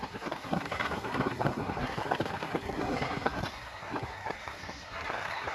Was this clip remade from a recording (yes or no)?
yes